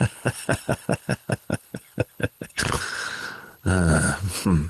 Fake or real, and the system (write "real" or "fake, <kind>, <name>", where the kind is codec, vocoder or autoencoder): fake, codec, HILCodec